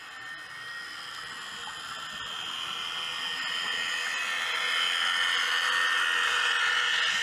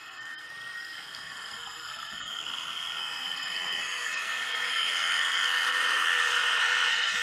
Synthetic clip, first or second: second